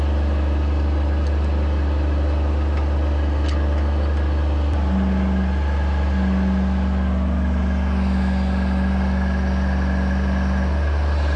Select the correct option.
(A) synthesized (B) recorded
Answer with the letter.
B